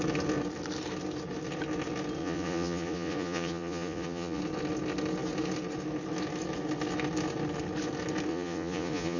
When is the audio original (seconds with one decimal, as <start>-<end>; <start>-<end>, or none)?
0.0-2.2; 4.4-8.3